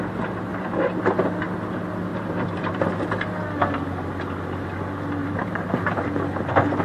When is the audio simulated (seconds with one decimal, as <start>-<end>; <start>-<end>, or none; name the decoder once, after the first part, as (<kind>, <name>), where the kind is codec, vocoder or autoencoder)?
0.5-1.2 (vocoder, BigVGAN v2); 2.1-3.1; 5.2-6.1